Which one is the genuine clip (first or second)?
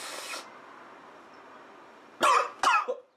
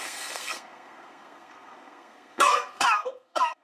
first